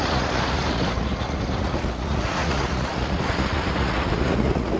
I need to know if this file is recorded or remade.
remade